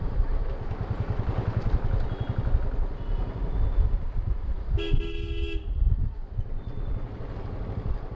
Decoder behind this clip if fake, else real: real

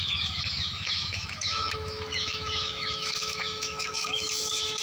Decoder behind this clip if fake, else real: fake, autoencoder, DAC-VAE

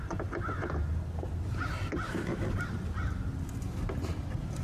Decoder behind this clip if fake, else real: real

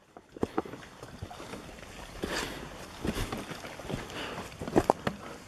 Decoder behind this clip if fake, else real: real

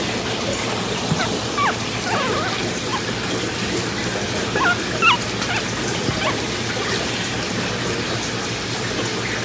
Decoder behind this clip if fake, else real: real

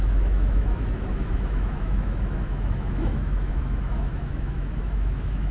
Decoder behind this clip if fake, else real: fake, autoencoder, DAC-VAE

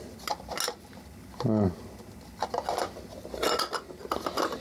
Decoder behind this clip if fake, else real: real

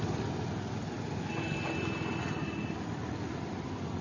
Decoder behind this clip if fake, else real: real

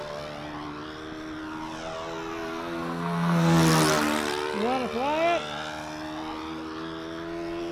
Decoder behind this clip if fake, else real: real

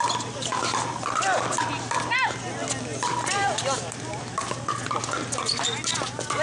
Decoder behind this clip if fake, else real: real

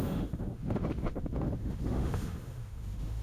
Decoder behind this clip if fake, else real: fake, autoencoder, DAC-VAE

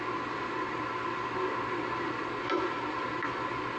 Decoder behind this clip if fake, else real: real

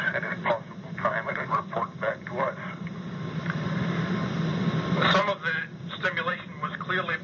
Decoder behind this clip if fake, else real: real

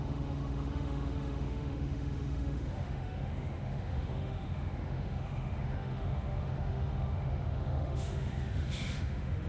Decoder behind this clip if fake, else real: fake, autoencoder, DAC-VAE